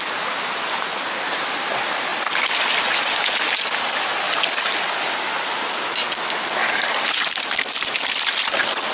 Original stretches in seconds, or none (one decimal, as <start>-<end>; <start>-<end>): 0.0-8.9